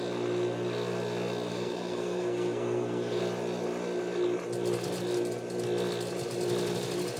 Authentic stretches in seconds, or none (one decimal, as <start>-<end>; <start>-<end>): 0.0-1.5; 3.2-7.2